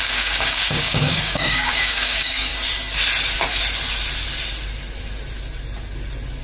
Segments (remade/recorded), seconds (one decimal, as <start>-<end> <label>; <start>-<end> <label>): 0.0-2.5 remade; 2.5-6.4 recorded